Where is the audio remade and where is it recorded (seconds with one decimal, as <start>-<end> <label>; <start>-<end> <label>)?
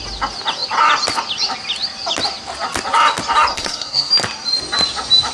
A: 0.0-3.5 recorded; 3.5-4.1 remade; 4.1-5.3 recorded